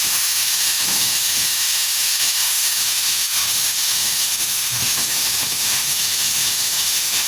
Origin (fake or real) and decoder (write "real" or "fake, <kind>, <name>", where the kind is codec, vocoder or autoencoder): fake, autoencoder, DAC-VAE